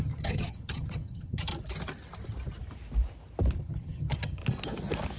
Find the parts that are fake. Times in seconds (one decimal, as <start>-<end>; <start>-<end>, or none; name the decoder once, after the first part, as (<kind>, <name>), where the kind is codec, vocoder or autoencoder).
0.0-1.5 (vocoder, HiFi-GAN); 3.6-4.4